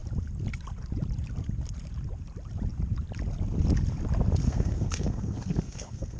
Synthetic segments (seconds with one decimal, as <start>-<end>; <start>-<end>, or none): 4.4-6.2